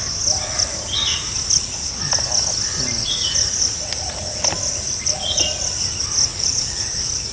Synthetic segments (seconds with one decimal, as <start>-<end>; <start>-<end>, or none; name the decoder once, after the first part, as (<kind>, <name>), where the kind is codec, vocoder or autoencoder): 3.0-3.8 (vocoder, Vocos); 6.3-7.3